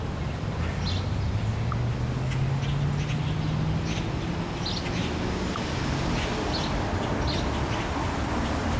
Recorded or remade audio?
recorded